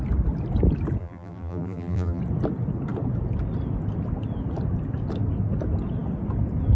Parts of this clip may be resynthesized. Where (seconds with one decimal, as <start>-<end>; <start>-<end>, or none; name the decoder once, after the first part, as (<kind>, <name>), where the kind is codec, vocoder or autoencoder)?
1.0-2.2 (vocoder, BigVGAN v2)